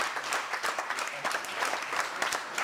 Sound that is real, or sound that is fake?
fake